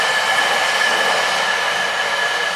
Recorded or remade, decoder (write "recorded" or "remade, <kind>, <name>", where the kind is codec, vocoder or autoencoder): recorded